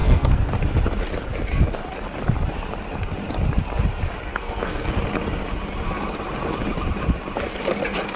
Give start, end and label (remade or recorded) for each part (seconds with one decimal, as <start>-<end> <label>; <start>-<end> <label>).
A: 0.0-0.5 remade; 0.5-4.3 recorded; 4.3-4.9 remade; 4.9-8.2 recorded

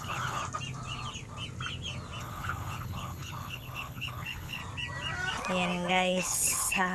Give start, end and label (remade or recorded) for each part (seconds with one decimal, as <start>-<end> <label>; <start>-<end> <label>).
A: 0.0-0.4 remade; 0.4-2.2 recorded; 2.2-4.6 remade; 4.6-5.9 recorded; 5.9-6.9 remade

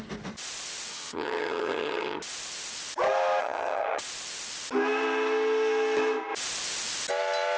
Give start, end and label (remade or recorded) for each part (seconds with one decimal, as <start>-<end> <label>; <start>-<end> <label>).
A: 0.0-0.9 recorded; 0.9-2.2 remade; 2.2-3.4 recorded; 3.4-4.0 remade; 4.0-7.6 recorded

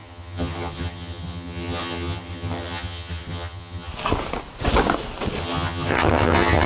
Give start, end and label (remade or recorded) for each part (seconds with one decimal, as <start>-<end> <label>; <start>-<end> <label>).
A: 0.0-3.9 remade; 3.9-5.4 recorded; 5.4-6.7 remade

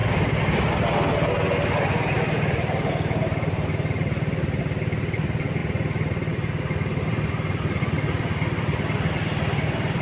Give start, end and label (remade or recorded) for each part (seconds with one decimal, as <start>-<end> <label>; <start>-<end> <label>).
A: 0.0-10.0 recorded

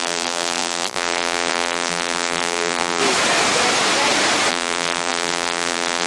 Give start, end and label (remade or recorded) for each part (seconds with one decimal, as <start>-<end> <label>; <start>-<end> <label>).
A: 0.0-3.0 remade; 3.0-4.5 recorded; 4.5-6.1 remade

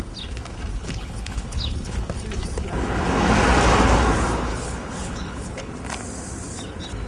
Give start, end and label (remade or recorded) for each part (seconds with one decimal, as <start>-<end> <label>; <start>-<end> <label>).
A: 0.0-0.7 recorded; 0.7-2.0 remade; 2.0-4.5 recorded; 4.5-5.7 remade; 5.7-7.1 recorded

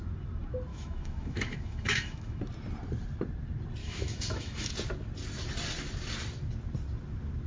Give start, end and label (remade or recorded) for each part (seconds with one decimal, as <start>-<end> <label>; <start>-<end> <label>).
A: 0.0-0.7 recorded; 0.7-2.4 remade; 2.4-3.8 recorded; 3.8-4.7 remade; 4.7-7.5 recorded